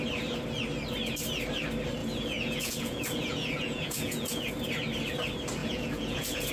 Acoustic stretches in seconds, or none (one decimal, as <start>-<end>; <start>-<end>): 0.0-2.0; 4.5-5.6